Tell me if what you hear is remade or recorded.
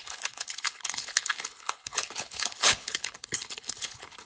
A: remade